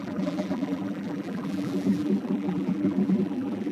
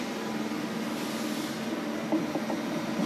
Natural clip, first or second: second